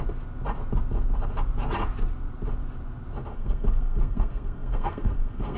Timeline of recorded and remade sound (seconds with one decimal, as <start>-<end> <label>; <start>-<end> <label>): 0.0-3.3 recorded; 3.3-5.6 remade